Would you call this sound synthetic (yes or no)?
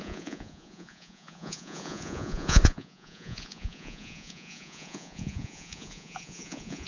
yes